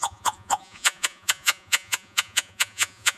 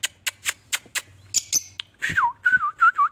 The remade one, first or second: first